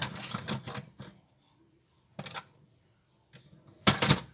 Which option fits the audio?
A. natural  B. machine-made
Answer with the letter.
A